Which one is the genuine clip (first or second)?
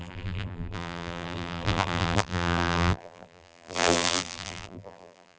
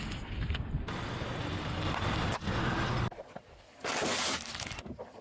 second